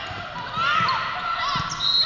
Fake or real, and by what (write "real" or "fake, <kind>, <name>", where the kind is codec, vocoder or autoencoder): real